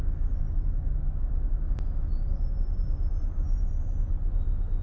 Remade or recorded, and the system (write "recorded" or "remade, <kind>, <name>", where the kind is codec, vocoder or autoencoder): recorded